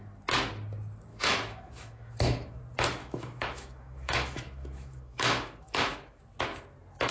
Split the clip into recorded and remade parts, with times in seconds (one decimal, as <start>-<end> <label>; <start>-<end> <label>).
0.0-1.1 recorded; 1.1-2.6 remade; 2.6-3.0 recorded; 3.0-6.2 remade; 6.2-7.1 recorded